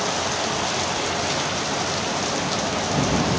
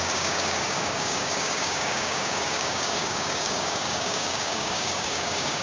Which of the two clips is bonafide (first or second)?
first